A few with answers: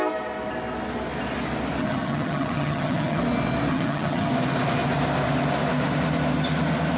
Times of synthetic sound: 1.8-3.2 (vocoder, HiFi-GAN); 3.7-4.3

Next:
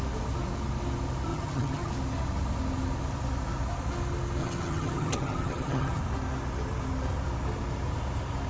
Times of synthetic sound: 1.3-1.9 (vocoder, HiFi-GAN); 4.4-6.0

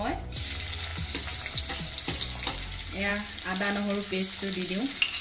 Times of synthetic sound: none